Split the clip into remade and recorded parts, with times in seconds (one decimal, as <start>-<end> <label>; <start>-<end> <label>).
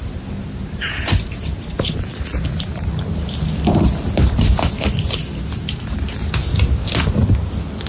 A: 0.0-7.9 recorded